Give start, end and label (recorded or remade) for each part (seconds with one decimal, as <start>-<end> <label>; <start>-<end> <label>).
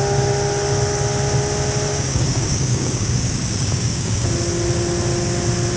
0.0-1.9 recorded; 1.9-4.3 remade; 4.3-5.8 recorded